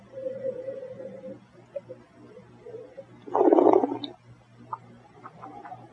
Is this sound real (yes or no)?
yes